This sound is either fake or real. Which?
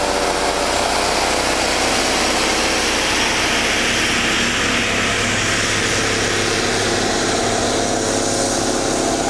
real